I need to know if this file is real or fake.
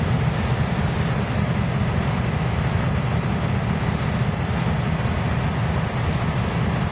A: real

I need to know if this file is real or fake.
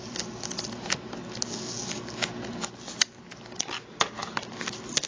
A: real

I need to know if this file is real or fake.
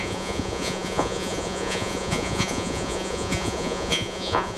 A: fake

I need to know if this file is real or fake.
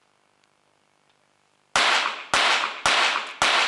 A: real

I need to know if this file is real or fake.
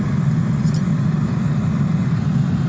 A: real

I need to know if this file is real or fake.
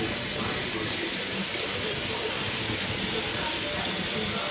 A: real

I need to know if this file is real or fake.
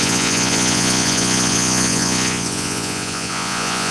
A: fake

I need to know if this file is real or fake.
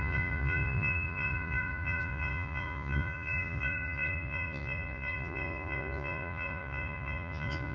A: fake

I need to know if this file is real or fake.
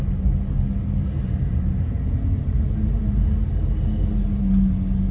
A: real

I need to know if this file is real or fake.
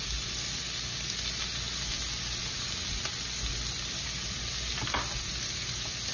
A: real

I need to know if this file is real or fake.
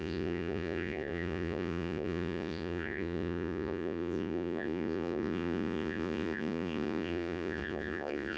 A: fake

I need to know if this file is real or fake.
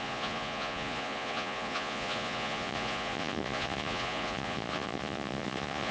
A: fake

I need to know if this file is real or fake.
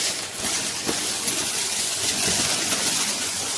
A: fake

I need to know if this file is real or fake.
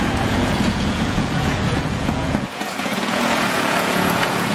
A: fake